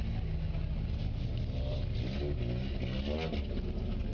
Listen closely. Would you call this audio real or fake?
real